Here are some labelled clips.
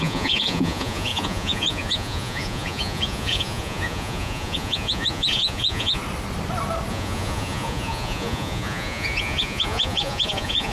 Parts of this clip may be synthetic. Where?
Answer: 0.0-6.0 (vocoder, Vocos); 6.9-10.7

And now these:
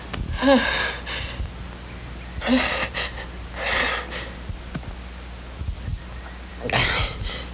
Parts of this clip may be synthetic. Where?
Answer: none

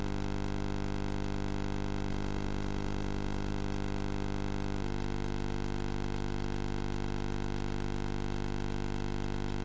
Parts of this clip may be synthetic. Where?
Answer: 2.1-3.5 (vocoder, Vocos)

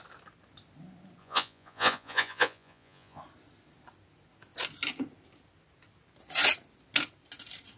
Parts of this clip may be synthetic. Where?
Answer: 1.2-3.2 (vocoder, Vocos)

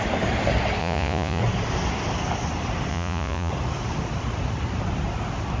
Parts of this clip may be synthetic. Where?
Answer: 0.8-1.4 (vocoder, Vocos); 2.9-3.5

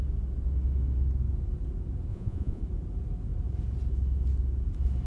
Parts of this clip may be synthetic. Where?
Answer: 2.1-2.6 (vocoder, Vocos)